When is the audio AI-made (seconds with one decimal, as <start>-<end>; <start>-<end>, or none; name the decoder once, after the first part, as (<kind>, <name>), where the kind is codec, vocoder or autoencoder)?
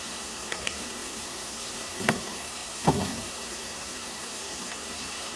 0.0-5.4 (codec, SNAC)